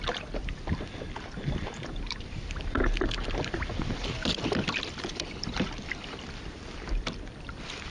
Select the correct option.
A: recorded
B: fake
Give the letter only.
B